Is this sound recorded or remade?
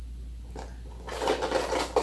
recorded